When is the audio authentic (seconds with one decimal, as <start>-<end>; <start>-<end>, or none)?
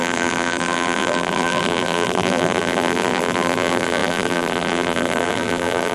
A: none